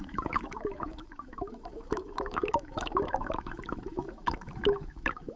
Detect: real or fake fake